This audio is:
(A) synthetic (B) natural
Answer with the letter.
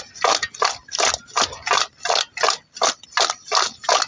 B